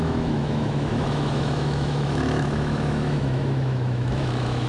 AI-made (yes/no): yes